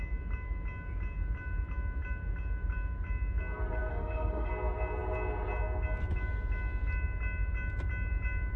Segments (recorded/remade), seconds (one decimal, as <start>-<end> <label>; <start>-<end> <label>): 0.0-3.9 recorded; 3.9-4.5 remade; 4.5-8.6 recorded